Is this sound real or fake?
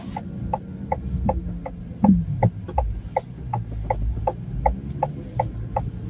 real